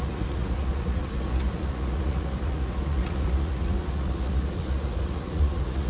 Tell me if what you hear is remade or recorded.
remade